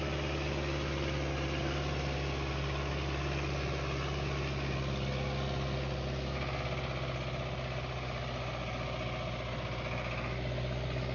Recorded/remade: recorded